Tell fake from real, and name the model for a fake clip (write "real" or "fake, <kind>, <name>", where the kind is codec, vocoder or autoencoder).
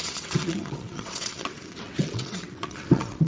fake, vocoder, WaveNeXt